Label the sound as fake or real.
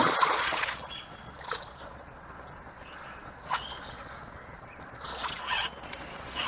fake